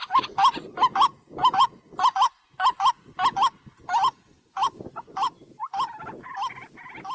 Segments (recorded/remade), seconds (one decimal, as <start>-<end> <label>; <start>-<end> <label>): 0.0-7.1 recorded